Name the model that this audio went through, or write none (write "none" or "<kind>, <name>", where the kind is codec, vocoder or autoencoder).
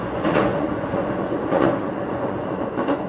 vocoder, Vocos